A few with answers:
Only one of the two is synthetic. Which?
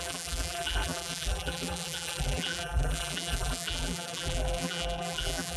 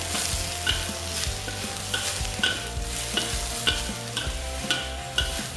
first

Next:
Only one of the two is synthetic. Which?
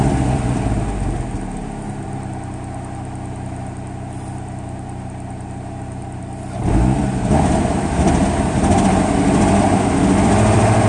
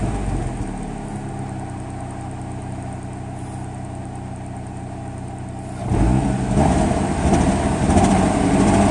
first